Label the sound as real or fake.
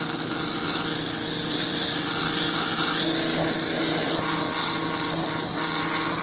real